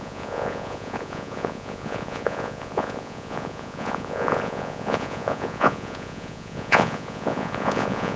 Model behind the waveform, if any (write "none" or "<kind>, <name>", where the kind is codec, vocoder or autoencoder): vocoder, Vocos